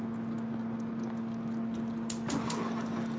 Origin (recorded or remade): recorded